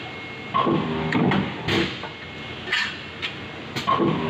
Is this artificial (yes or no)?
no